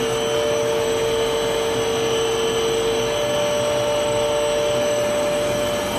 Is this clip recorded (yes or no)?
yes